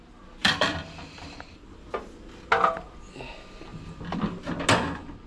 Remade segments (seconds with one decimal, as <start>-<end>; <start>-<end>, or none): 0.4-1.9; 3.7-4.4